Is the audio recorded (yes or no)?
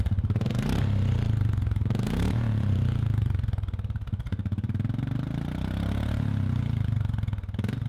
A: no